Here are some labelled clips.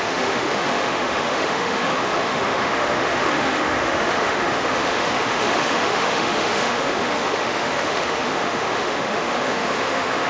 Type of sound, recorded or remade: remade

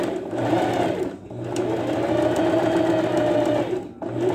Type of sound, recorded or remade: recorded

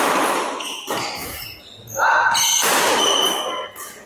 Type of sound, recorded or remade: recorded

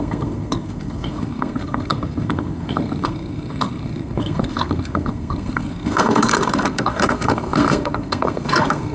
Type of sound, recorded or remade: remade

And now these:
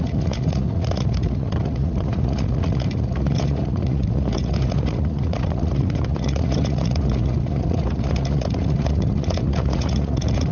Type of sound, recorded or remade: remade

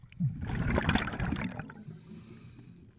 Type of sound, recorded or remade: recorded